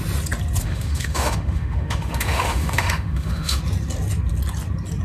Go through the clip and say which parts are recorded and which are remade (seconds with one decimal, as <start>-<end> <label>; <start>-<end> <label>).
0.0-0.6 recorded; 0.6-3.6 remade; 3.6-5.0 recorded